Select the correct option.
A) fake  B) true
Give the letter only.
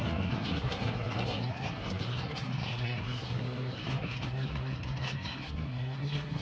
A